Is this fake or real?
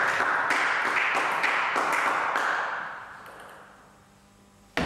real